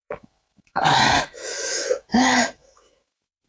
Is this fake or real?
fake